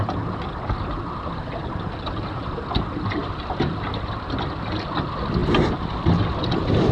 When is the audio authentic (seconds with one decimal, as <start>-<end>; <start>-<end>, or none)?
0.0-6.9

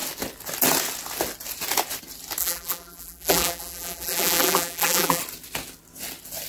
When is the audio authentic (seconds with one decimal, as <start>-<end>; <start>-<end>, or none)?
0.0-2.4; 5.2-6.5

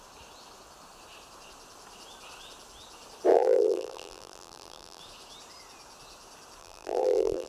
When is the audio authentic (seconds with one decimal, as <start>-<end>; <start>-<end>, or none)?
0.0-3.3; 5.0-6.6